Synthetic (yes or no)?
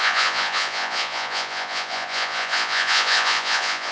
yes